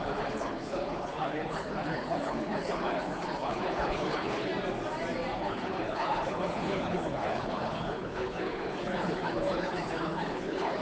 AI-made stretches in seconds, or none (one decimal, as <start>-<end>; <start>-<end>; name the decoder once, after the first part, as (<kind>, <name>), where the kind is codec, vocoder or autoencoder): 0.0-4.5 (codec, HILCodec); 5.4-10.8